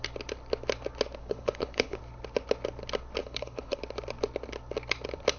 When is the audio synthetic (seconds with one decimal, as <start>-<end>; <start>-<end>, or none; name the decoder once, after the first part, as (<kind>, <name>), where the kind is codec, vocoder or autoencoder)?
1.2-2.0 (codec, HILCodec); 3.2-3.8